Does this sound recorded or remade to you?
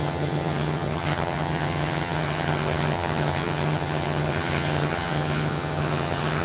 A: remade